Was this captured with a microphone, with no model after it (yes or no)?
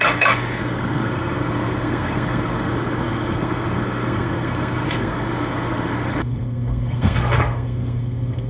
no